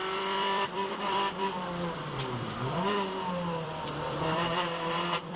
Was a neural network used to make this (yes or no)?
yes